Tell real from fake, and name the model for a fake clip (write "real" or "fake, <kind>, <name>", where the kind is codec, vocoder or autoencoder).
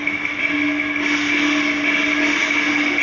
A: real